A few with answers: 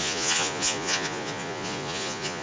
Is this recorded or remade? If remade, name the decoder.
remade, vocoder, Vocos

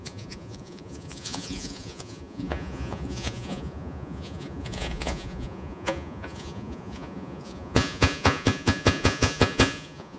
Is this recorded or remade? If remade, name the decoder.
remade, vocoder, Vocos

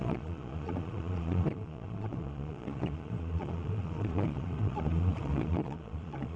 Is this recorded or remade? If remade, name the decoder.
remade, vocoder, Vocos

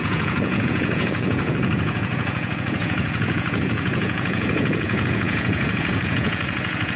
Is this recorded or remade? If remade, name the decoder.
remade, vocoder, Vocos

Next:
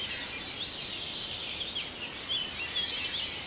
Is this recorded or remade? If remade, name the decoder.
recorded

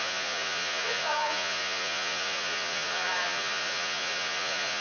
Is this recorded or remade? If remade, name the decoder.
remade, vocoder, Vocos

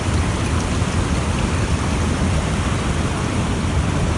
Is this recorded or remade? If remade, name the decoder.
recorded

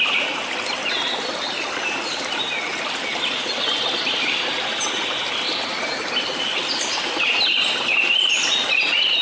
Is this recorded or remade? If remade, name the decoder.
recorded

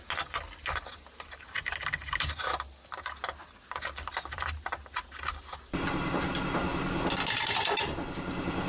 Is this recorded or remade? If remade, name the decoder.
recorded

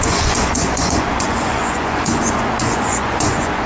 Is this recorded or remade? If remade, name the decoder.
remade, vocoder, Vocos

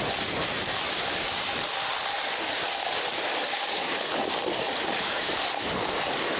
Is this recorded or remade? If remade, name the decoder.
recorded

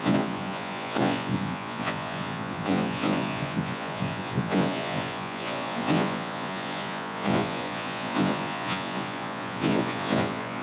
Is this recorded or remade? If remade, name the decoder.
remade, vocoder, Vocos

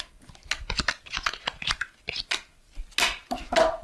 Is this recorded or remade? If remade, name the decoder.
recorded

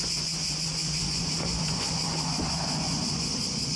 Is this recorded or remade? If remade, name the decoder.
remade, vocoder, Vocos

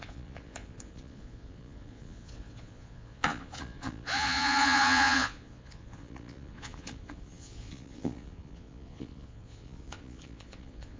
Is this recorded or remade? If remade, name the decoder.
remade, vocoder, Vocos